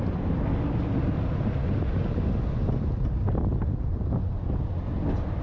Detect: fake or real real